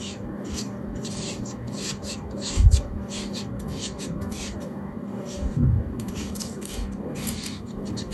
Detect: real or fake fake